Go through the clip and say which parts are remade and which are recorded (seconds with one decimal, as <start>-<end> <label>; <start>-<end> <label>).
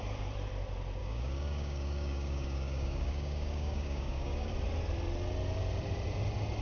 0.0-1.0 recorded; 1.0-4.5 remade; 4.5-6.6 recorded